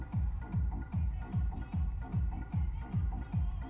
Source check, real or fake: fake